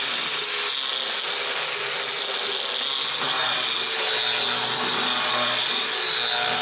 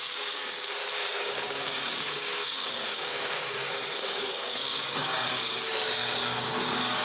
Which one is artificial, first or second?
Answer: second